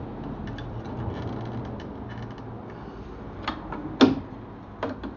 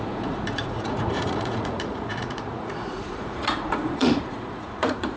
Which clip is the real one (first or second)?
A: first